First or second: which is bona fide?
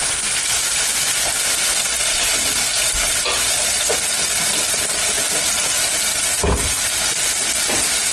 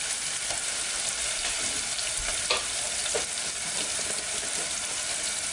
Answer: first